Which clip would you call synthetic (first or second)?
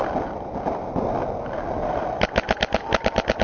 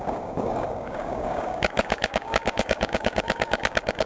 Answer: second